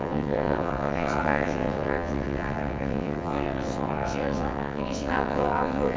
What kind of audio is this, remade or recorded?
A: remade